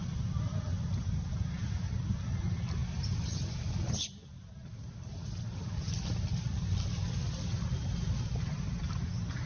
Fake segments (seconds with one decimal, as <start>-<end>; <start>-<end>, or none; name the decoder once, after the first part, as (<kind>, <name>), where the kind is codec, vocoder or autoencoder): 0.7-1.7 (vocoder, BigVGAN v2); 6.3-8.8